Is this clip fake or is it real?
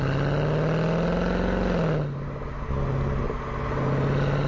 real